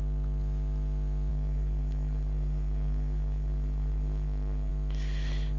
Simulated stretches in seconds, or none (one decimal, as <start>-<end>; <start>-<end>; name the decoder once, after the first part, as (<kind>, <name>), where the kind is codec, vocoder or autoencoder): 1.3-4.7 (codec, SNAC)